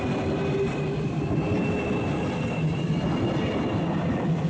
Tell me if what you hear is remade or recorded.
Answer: recorded